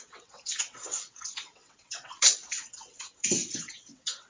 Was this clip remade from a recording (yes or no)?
yes